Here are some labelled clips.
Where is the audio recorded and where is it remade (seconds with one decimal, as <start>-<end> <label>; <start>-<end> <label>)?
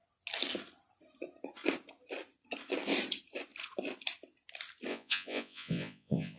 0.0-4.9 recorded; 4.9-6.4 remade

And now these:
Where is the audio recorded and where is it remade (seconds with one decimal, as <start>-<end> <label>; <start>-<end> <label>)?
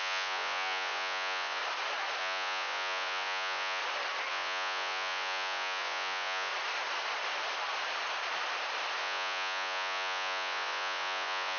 0.0-1.6 remade; 1.6-2.2 recorded; 2.2-3.8 remade; 3.8-4.3 recorded; 4.3-6.5 remade; 6.5-9.0 recorded; 9.0-11.6 remade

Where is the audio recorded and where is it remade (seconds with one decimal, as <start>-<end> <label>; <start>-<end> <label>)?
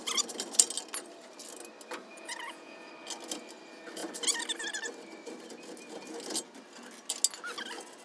0.0-2.1 recorded; 2.1-2.9 remade; 2.9-8.0 recorded